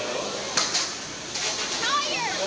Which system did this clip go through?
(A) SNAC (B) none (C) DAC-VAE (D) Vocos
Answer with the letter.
B